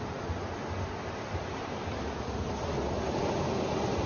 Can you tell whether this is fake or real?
real